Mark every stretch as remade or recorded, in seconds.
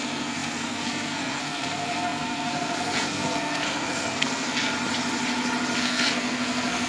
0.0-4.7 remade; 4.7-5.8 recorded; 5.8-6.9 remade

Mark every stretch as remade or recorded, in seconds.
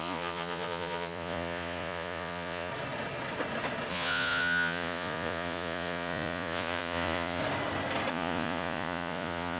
0.0-2.7 remade; 2.7-3.9 recorded; 3.9-7.4 remade; 7.4-8.1 recorded; 8.1-9.6 remade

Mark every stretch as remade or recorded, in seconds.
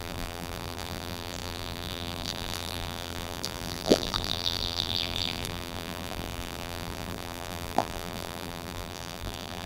0.0-9.7 remade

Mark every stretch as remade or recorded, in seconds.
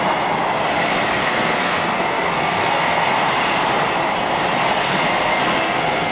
0.0-1.2 recorded; 1.2-3.1 remade; 3.1-5.1 recorded; 5.1-6.1 remade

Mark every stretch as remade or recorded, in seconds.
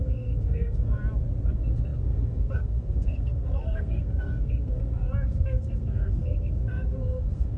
0.0-1.0 remade; 1.0-1.5 recorded; 1.5-7.6 remade